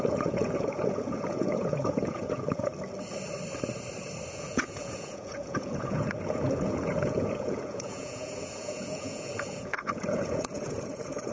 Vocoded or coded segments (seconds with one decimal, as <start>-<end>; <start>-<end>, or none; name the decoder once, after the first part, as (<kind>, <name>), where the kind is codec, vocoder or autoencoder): 0.0-2.7 (vocoder, Vocos); 4.3-11.3